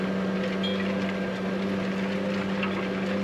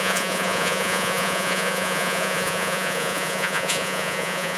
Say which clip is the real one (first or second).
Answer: first